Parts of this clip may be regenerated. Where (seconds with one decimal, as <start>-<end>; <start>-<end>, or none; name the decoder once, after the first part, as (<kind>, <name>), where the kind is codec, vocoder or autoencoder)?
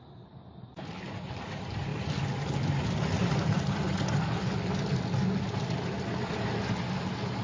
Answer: none